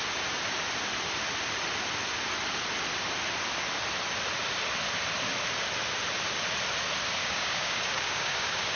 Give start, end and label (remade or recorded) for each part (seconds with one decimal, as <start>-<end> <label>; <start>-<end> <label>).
0.0-7.2 recorded; 7.2-8.8 remade